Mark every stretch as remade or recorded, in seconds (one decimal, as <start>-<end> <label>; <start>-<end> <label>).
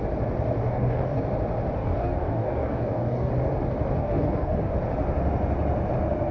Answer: 0.0-0.6 recorded; 0.6-1.2 remade; 1.2-1.8 recorded; 1.8-3.3 remade; 3.3-4.0 recorded; 4.0-4.7 remade; 4.7-6.3 recorded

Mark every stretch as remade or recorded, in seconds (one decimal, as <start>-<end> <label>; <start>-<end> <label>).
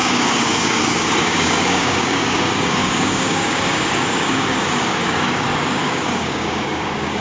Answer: 0.0-7.2 remade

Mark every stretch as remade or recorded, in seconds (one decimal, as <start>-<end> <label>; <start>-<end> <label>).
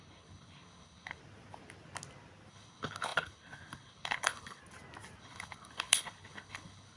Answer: 0.0-1.2 remade; 1.2-2.5 recorded; 2.5-4.6 remade; 4.6-5.2 recorded; 5.2-7.0 remade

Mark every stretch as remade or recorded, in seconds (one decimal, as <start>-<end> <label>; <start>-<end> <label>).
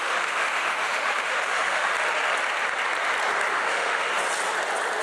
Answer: 0.0-1.9 remade; 1.9-3.5 recorded; 3.5-4.1 remade; 4.1-5.0 recorded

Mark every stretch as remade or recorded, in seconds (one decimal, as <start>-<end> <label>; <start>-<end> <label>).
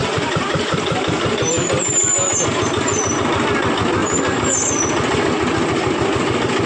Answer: 0.0-3.2 remade; 3.2-4.0 recorded; 4.0-4.7 remade; 4.7-6.7 recorded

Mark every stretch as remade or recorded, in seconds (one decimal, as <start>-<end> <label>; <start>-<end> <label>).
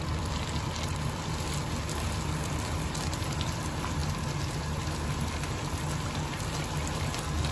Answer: 0.0-7.5 recorded